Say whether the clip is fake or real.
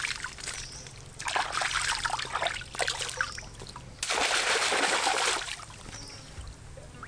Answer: real